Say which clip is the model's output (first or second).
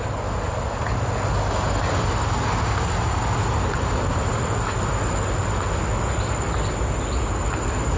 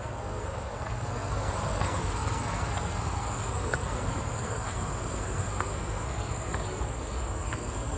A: second